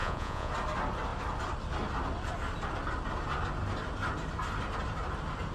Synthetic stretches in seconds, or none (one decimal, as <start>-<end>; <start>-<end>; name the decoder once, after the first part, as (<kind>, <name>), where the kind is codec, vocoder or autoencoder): 0.0-0.5 (vocoder, Vocos)